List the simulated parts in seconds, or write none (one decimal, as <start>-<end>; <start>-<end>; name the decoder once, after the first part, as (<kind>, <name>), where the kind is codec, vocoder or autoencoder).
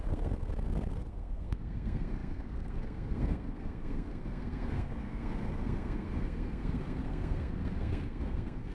0.0-8.7 (codec, SNAC)